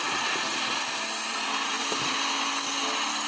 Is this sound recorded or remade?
recorded